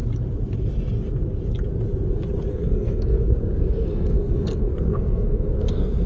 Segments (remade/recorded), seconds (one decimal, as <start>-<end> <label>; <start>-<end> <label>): 0.0-2.5 recorded; 2.5-6.1 remade